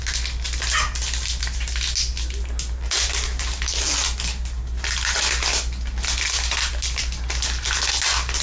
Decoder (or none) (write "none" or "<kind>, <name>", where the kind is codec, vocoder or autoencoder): none